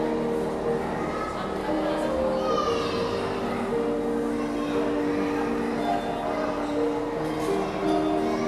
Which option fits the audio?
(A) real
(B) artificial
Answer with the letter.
A